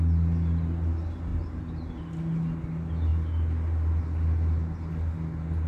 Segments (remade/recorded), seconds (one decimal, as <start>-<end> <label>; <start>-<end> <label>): 0.0-1.3 recorded; 1.3-1.9 remade; 1.9-5.7 recorded